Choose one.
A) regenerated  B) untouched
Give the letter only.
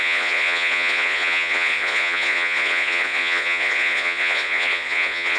A